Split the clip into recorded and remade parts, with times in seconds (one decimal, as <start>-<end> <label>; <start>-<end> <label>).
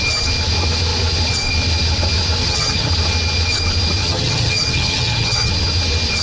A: 0.0-2.4 recorded; 2.4-2.9 remade; 2.9-4.0 recorded; 4.0-5.5 remade; 5.5-6.2 recorded